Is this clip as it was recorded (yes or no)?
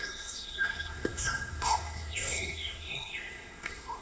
no